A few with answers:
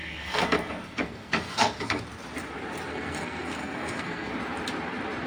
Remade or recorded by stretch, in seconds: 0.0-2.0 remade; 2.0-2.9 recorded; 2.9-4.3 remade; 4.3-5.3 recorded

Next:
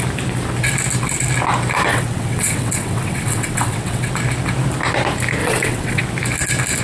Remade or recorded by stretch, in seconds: 0.0-1.9 recorded; 1.9-4.1 remade; 4.1-5.4 recorded; 5.4-6.0 remade; 6.0-6.8 recorded

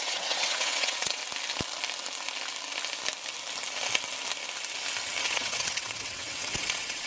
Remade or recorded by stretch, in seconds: 0.0-1.2 remade; 1.2-5.2 recorded; 5.2-7.1 remade

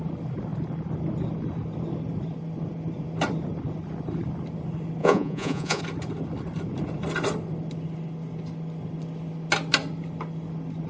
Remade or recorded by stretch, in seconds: 0.0-5.0 recorded; 5.0-5.8 remade; 5.8-10.9 recorded

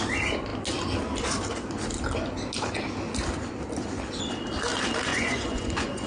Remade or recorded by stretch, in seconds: 0.0-5.1 recorded; 5.1-6.1 remade